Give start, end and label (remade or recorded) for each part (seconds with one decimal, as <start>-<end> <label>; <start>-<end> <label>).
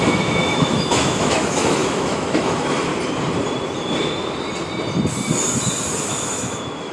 0.0-2.9 remade; 2.9-6.0 recorded; 6.0-6.9 remade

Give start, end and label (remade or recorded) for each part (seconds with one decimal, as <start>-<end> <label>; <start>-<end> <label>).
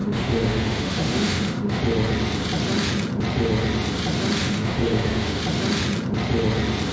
0.0-1.8 remade; 1.8-4.4 recorded; 4.4-5.4 remade; 5.4-6.9 recorded